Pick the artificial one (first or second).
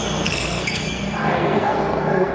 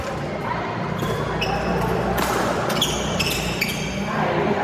first